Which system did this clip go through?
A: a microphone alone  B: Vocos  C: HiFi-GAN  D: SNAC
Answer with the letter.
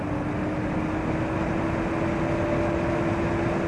A